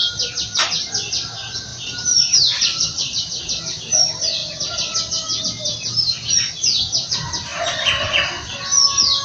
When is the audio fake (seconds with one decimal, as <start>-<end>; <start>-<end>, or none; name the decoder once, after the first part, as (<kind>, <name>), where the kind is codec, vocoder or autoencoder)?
1.7-3.4 (vocoder, BigVGAN v2)